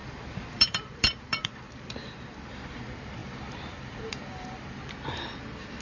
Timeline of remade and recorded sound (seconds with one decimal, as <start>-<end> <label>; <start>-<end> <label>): 0.0-2.8 remade; 2.8-3.2 recorded; 3.2-4.7 remade; 4.7-5.8 recorded

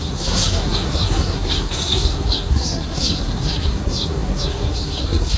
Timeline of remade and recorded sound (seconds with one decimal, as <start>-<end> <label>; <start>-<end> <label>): 0.0-5.4 remade

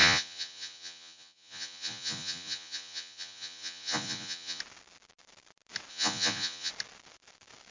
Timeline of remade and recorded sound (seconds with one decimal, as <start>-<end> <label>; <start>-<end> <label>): 0.0-4.6 remade; 4.6-5.9 recorded; 5.9-6.7 remade; 6.7-7.7 recorded

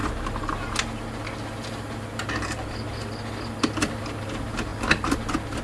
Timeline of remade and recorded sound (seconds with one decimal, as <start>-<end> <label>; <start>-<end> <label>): 0.0-5.6 recorded

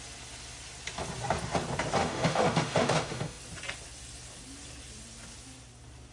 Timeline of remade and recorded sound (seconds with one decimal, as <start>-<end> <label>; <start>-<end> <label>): 0.0-2.0 recorded; 2.0-3.4 remade; 3.4-6.1 recorded

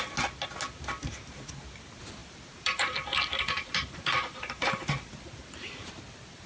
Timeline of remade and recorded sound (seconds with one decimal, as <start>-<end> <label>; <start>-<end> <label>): 0.0-1.0 recorded; 1.0-1.5 remade; 1.5-2.2 recorded; 2.2-5.9 remade; 5.9-6.5 recorded

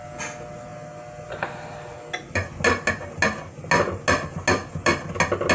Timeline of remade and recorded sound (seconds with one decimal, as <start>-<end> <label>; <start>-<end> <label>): 0.0-5.5 recorded

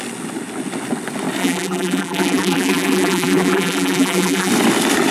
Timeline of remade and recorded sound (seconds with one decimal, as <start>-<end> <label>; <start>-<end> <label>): 0.0-1.4 recorded; 1.4-4.5 remade; 4.5-5.1 recorded